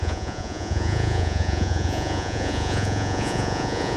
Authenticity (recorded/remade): remade